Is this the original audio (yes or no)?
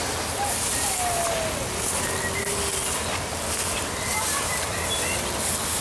yes